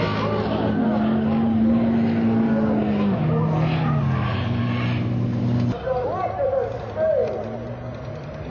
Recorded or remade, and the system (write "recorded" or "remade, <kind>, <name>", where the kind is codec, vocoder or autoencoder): recorded